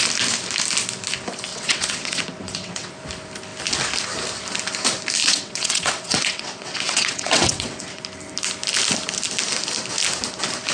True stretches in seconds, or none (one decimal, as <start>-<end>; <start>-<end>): 0.0-1.5; 2.9-5.2; 8.0-10.7